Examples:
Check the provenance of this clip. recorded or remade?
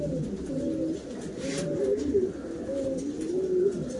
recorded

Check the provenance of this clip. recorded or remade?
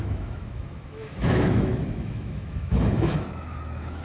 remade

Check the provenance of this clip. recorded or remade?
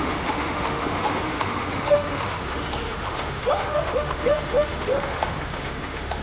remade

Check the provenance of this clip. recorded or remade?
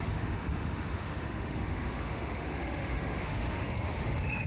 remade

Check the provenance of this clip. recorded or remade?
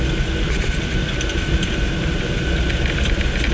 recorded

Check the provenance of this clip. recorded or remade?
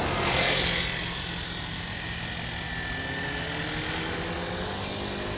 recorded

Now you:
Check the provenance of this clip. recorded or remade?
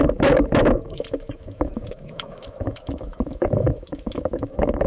remade